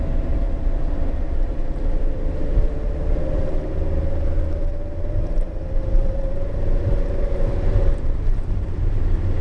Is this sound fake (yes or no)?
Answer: yes